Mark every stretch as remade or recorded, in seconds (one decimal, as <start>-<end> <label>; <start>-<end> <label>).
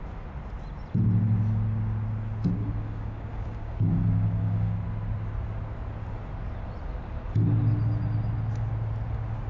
0.0-2.6 recorded; 2.6-4.8 remade; 4.8-9.5 recorded